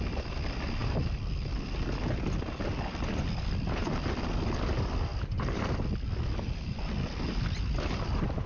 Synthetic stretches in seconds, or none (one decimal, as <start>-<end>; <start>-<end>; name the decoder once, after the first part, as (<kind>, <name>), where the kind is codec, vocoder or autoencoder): none